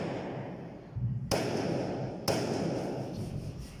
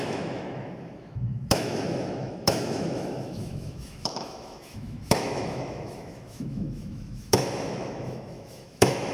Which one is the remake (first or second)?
second